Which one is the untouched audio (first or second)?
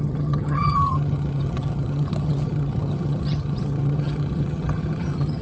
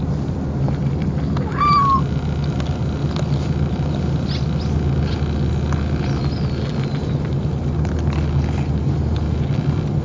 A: second